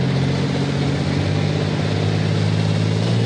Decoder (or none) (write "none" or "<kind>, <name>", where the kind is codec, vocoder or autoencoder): none